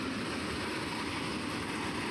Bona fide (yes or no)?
yes